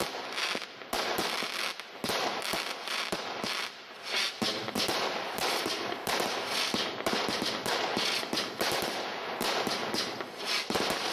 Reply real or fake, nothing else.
real